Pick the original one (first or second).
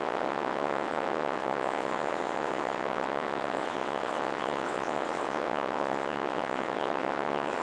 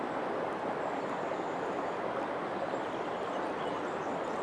second